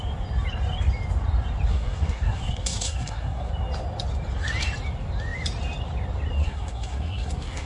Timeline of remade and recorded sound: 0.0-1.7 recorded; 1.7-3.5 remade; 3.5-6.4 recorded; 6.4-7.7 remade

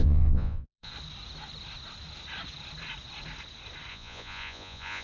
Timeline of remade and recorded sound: 0.0-0.9 remade; 0.9-3.9 recorded; 3.9-5.0 remade

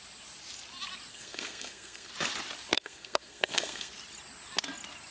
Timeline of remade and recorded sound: 0.0-1.1 recorded; 1.1-2.1 remade; 2.1-2.7 recorded; 2.7-3.9 remade; 3.9-5.1 recorded

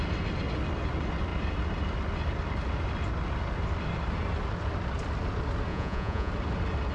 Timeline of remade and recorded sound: 0.0-5.7 recorded; 5.7-6.3 remade; 6.3-6.9 recorded

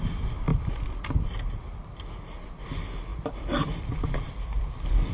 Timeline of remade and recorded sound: 0.0-0.5 recorded; 0.5-1.2 remade; 1.2-3.1 recorded; 3.1-5.1 remade